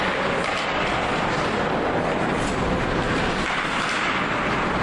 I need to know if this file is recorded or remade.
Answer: recorded